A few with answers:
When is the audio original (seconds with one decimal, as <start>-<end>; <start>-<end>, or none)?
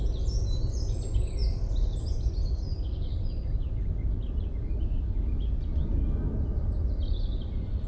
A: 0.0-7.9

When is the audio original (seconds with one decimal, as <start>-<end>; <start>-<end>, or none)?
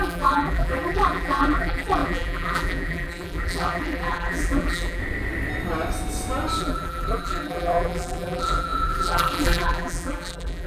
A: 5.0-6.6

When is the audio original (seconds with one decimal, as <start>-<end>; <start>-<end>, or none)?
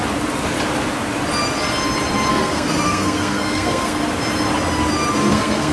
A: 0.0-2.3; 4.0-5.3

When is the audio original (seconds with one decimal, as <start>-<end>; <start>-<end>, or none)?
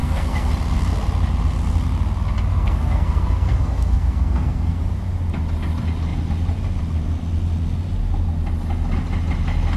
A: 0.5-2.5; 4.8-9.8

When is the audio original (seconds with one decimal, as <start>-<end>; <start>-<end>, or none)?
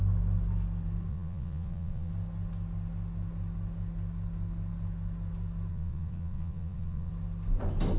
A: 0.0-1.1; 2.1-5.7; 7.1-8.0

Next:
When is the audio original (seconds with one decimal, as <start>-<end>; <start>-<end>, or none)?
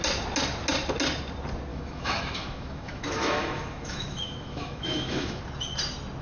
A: 0.0-1.7; 5.4-6.2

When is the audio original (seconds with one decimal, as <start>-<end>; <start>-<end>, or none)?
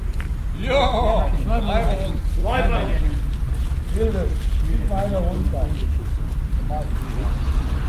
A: 0.0-2.4; 3.2-7.9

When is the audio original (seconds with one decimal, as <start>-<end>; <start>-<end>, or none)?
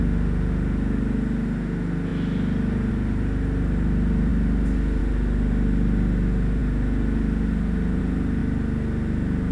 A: 0.0-9.5